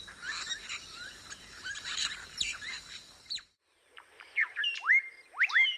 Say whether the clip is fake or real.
fake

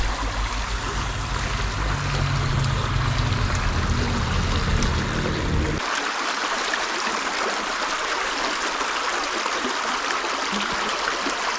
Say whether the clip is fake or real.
real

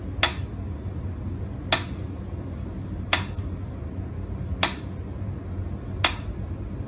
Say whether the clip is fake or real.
real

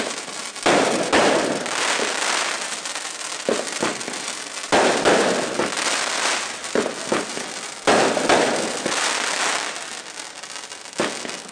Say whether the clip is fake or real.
real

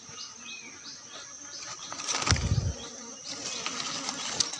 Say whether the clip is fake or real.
real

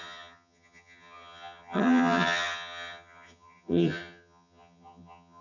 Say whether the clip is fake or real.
fake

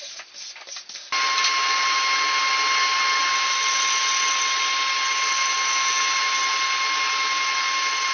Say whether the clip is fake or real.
real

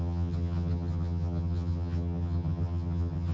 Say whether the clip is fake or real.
fake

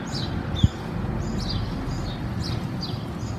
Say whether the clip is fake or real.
real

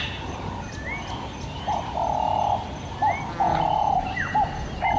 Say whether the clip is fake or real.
real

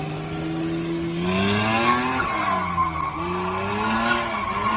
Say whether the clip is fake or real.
real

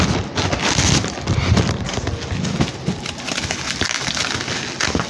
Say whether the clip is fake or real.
real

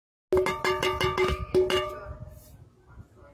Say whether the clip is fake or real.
real